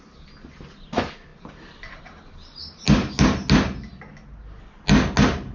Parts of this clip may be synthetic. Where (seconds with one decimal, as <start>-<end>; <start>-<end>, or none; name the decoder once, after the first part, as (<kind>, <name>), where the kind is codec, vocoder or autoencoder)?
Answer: none